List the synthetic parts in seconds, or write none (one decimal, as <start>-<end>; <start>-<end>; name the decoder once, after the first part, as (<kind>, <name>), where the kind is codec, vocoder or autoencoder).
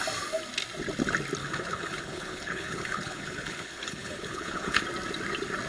1.4-4.8 (codec, HILCodec)